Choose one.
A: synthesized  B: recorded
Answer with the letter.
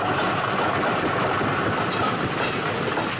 B